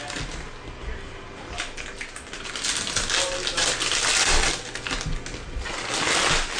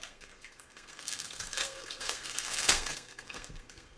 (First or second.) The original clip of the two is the first